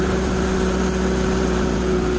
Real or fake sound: real